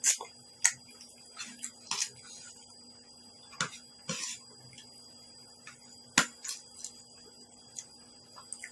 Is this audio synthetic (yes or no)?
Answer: no